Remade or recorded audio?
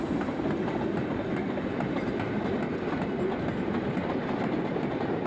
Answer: recorded